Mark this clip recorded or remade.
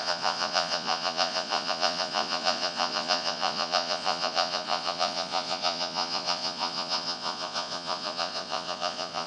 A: remade